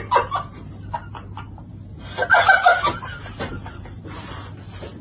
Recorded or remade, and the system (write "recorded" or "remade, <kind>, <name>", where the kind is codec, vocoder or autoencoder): recorded